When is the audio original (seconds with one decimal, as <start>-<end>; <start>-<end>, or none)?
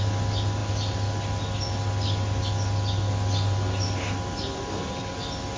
0.0-5.6